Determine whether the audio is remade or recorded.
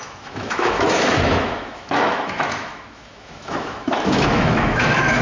remade